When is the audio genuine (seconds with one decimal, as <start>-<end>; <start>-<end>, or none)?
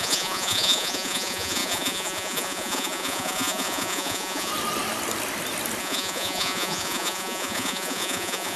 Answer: 4.5-5.8